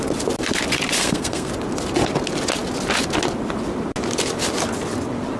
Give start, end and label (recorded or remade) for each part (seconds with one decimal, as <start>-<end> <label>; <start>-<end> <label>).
0.0-1.0 recorded; 1.0-1.5 remade; 1.5-5.4 recorded